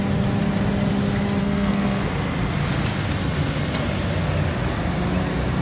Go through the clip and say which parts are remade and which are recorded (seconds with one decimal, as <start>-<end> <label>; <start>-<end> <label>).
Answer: 0.0-1.4 recorded; 1.4-2.1 remade; 2.1-5.6 recorded